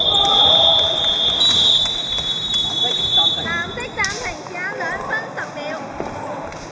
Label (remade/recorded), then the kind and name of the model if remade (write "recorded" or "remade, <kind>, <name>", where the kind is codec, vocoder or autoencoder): recorded